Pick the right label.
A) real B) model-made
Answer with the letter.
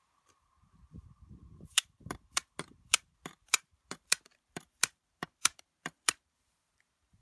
B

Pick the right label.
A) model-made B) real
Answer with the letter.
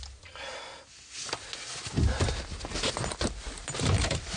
B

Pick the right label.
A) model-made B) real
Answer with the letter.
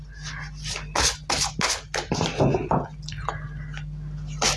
B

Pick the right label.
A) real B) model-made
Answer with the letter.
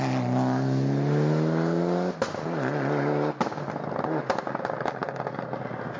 A